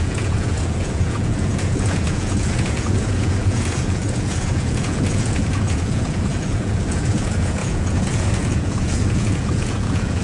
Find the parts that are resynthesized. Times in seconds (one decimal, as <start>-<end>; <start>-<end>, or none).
0.0-10.2